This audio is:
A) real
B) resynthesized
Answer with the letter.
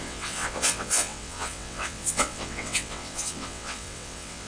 B